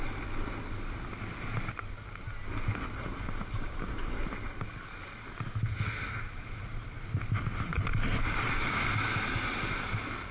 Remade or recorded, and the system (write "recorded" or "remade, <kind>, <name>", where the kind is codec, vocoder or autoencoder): recorded